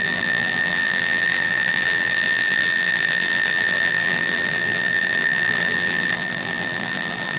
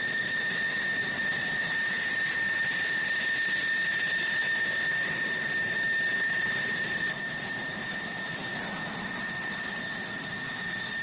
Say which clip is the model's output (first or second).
first